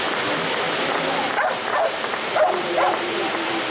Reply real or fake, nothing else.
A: real